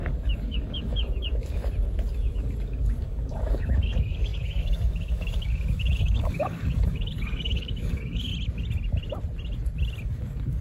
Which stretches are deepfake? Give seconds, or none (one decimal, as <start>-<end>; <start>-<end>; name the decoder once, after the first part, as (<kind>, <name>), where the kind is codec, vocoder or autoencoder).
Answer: 0.0-1.6 (codec, DAC); 2.2-8.3; 10.0-10.6